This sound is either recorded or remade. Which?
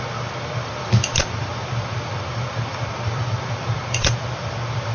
remade